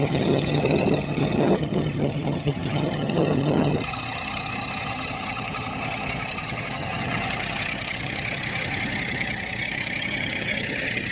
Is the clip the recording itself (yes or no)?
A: no